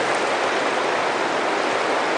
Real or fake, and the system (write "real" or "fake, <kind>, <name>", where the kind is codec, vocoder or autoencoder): real